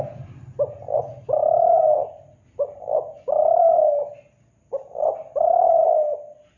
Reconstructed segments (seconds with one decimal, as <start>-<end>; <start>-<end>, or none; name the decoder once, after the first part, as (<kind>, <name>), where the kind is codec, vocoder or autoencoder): none